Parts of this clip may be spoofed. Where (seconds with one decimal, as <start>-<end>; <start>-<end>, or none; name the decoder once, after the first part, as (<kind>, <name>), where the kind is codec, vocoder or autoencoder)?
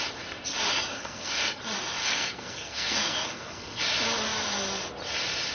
0.9-1.6 (codec, SNAC); 2.0-3.8